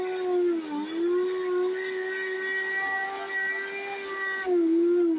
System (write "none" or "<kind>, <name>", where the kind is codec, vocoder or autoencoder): none